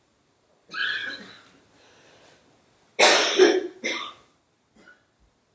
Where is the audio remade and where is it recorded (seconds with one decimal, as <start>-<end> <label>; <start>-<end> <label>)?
0.0-5.5 recorded